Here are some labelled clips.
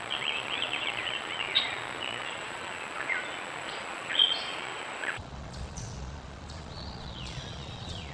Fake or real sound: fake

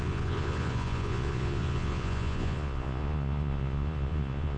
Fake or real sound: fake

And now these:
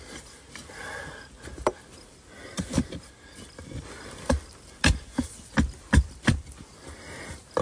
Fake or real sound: real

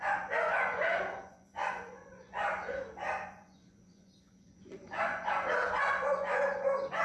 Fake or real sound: fake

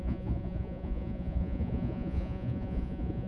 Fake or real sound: fake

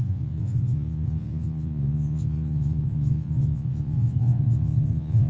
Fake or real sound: fake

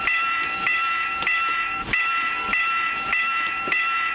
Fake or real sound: real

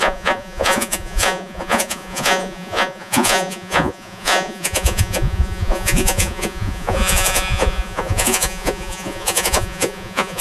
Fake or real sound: fake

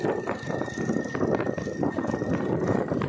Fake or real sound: real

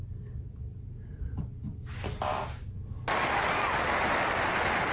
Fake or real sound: real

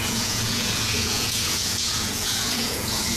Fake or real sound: fake